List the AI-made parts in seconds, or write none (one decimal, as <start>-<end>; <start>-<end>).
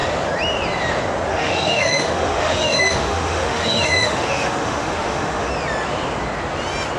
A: 1.3-5.5